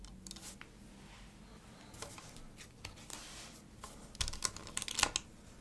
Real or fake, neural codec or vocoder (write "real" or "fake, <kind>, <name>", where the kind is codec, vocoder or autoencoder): real